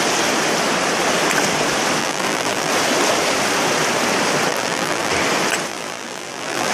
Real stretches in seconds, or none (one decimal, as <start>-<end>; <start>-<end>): 0.0-2.0; 2.7-4.5; 5.1-5.7